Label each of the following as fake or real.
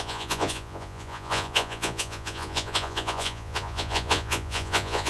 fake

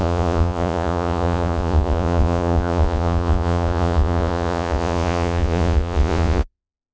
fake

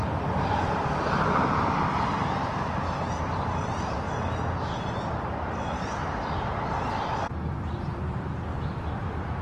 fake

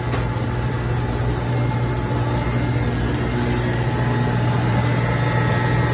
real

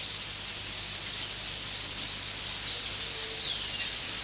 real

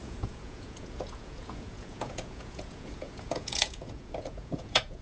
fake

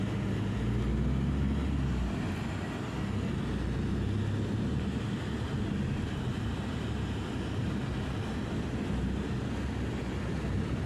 real